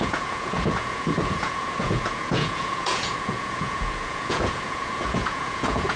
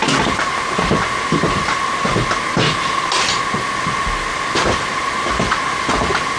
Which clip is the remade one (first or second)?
first